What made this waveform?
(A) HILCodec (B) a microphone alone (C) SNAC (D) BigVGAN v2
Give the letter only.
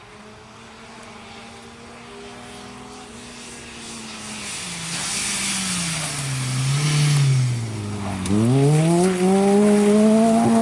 B